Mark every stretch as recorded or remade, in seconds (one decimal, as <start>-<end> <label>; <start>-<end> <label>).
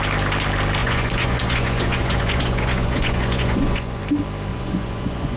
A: 0.0-0.8 recorded; 0.8-4.0 remade; 4.0-4.5 recorded; 4.5-5.4 remade